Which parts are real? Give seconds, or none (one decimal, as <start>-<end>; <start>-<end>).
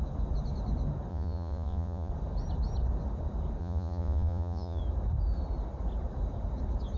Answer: 0.0-1.1; 2.1-3.6; 4.8-7.0